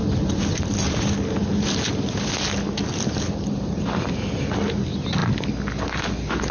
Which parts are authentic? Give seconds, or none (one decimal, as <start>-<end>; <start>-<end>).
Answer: 0.0-6.5